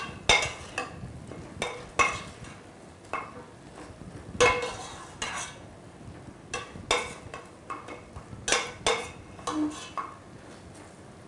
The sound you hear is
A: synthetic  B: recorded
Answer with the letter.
B